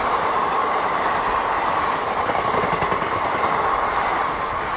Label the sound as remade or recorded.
recorded